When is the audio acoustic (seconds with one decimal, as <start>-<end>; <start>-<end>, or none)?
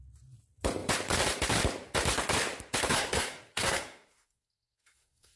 0.0-2.9